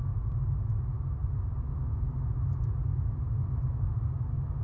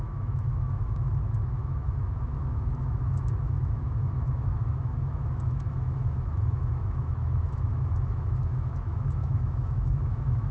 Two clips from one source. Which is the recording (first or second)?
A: first